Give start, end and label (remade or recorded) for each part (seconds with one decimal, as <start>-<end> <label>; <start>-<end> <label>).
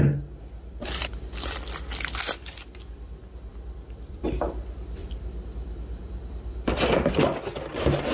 0.0-3.5 recorded; 3.5-4.3 remade; 4.3-5.0 recorded; 5.0-6.7 remade; 6.7-8.1 recorded